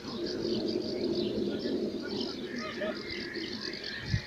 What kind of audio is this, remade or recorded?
recorded